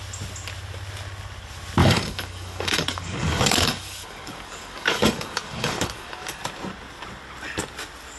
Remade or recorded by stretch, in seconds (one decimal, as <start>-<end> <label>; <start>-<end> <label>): 0.0-1.8 recorded; 1.8-6.4 remade; 6.4-8.2 recorded